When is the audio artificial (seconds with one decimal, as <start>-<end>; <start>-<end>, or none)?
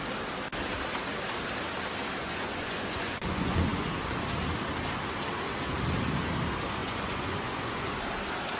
2.2-3.9; 6.8-8.0